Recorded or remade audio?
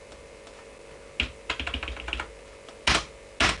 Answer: recorded